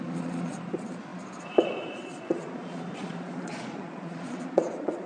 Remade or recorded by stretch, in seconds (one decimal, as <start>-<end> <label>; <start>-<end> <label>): 0.0-5.1 remade